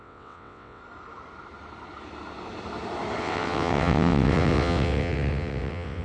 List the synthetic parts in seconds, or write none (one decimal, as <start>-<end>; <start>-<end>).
0.0-0.8; 3.2-6.0